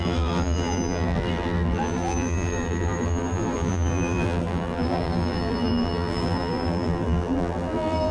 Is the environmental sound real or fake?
fake